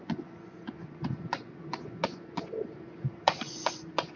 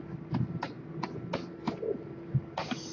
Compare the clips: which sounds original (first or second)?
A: second